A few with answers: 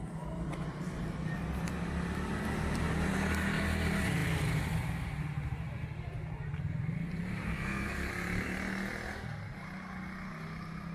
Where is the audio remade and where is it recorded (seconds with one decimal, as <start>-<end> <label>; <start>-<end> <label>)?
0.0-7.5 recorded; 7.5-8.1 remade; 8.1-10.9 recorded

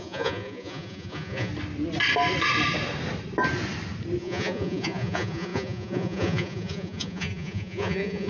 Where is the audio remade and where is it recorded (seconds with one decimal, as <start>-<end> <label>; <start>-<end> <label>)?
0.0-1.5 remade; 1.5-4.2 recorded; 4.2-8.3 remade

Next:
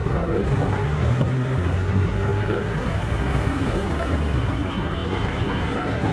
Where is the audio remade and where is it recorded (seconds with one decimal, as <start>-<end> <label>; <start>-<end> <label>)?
0.0-6.1 remade

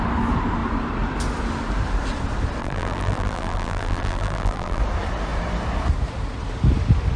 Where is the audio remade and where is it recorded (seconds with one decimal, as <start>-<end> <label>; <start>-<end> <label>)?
0.0-2.6 recorded; 2.6-4.8 remade; 4.8-7.2 recorded

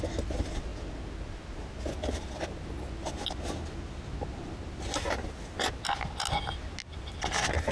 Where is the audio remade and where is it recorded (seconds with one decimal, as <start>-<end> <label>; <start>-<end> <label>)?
0.0-7.7 recorded

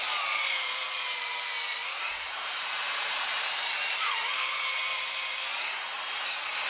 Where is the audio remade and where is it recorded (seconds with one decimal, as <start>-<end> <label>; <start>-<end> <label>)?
0.0-6.7 remade

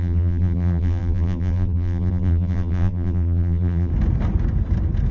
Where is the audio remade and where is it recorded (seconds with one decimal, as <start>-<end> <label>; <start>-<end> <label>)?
0.0-3.9 remade; 3.9-5.1 recorded

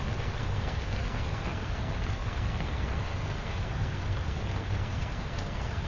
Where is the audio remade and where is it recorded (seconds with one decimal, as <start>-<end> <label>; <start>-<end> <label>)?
0.0-5.9 remade